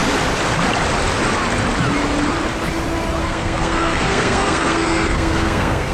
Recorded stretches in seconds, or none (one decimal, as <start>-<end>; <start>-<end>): 0.0-3.2